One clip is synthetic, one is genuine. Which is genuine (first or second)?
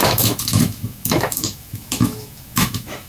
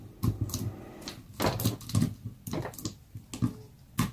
second